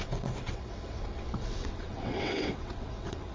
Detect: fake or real fake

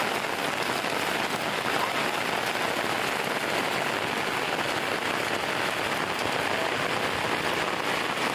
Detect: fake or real real